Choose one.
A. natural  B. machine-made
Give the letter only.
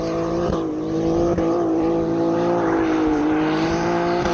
B